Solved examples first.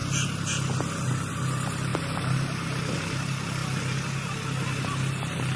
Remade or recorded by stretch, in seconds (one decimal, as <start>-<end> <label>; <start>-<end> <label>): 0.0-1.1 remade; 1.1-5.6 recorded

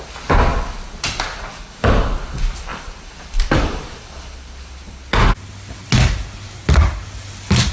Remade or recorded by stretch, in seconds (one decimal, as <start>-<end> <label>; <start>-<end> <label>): 0.0-2.7 recorded; 2.7-4.9 remade; 4.9-7.7 recorded

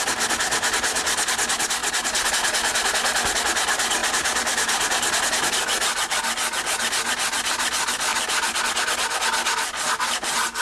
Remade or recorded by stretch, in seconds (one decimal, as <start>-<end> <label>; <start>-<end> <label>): 0.0-4.0 recorded; 4.0-6.2 remade; 6.2-8.1 recorded; 8.1-8.6 remade; 8.6-10.6 recorded

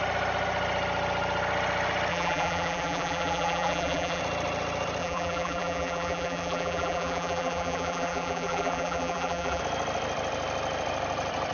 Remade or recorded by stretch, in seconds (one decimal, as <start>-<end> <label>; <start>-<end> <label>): 0.0-2.1 recorded; 2.1-4.2 remade; 4.2-5.0 recorded; 5.0-9.6 remade; 9.6-11.5 recorded

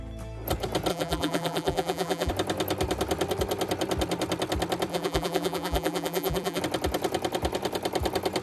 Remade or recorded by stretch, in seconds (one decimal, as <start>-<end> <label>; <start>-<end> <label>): 0.0-0.9 recorded; 0.9-2.3 remade; 2.3-4.9 recorded; 4.9-6.6 remade; 6.6-8.4 recorded

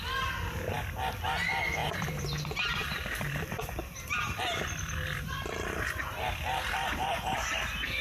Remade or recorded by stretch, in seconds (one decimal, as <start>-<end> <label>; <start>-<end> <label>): 0.0-1.8 recorded; 1.8-2.4 remade; 2.4-2.8 recorded; 2.8-7.5 remade; 7.5-8.0 recorded

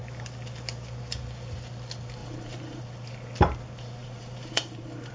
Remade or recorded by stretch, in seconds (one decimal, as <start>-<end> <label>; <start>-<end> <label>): 0.0-2.2 recorded; 2.2-2.8 remade; 2.8-4.0 recorded; 4.0-5.1 remade